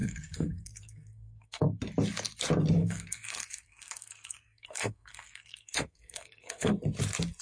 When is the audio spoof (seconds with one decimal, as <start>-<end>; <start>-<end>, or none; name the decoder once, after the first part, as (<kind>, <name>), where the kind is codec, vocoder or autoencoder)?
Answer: 0.0-1.8 (codec, SNAC); 2.8-6.7